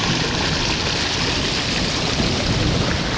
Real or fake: real